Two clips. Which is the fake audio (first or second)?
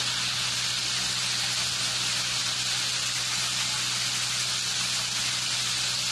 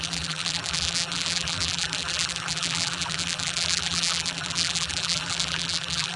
second